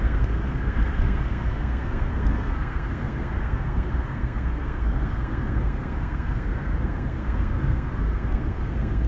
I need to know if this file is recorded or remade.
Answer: remade